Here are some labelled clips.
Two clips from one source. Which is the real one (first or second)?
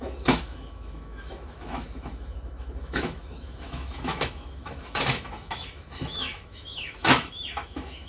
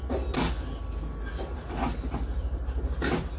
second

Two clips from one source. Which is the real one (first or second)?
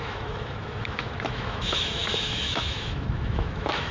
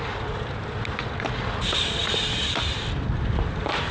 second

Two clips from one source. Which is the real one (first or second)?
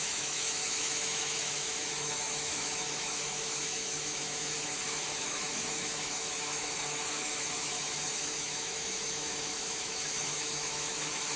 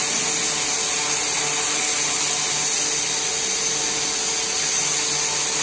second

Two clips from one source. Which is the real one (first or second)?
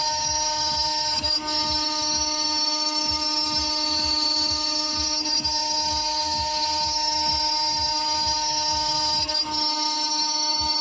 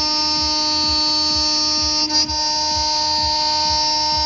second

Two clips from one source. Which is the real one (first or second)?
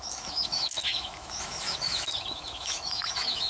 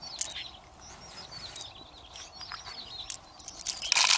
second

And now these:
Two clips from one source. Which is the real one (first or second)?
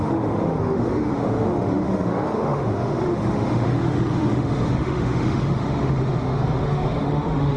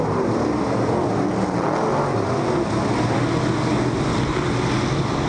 second